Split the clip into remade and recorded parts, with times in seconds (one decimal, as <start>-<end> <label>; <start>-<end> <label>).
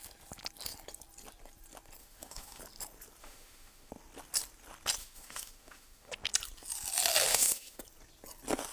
0.0-2.0 recorded; 2.0-2.6 remade; 2.6-3.2 recorded; 3.2-3.9 remade; 3.9-5.0 recorded; 5.0-6.1 remade; 6.1-7.3 recorded; 7.3-7.8 remade; 7.8-8.7 recorded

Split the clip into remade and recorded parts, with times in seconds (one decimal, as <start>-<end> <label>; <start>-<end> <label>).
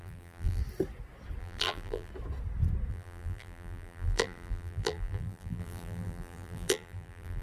0.0-0.6 remade; 0.6-1.4 recorded; 1.4-2.1 remade; 2.1-2.9 recorded; 2.9-7.4 remade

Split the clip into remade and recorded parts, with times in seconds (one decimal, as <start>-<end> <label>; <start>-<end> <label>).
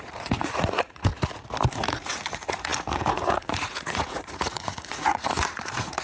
0.0-1.1 remade; 1.1-1.7 recorded; 1.7-6.0 remade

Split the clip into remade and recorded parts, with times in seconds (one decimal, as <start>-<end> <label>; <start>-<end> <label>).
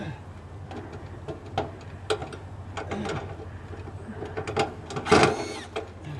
0.0-6.2 recorded